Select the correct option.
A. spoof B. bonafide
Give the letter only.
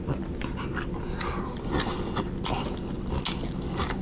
B